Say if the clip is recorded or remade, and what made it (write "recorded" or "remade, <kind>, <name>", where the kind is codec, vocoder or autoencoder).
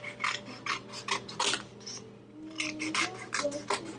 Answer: recorded